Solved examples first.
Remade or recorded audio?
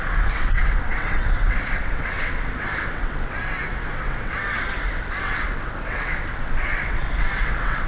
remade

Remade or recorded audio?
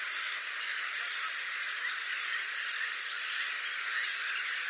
recorded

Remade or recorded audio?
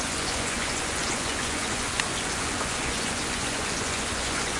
remade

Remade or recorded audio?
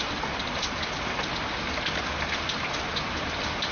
recorded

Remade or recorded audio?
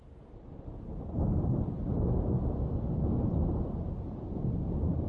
recorded